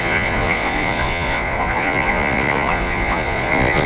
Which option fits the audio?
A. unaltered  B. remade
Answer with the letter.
B